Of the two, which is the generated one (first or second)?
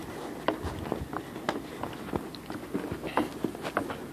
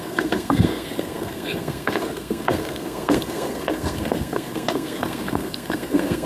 second